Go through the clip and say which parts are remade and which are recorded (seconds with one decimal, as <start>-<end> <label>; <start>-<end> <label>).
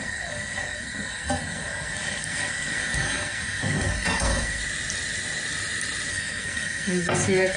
0.0-4.6 remade; 4.6-6.1 recorded; 6.1-7.6 remade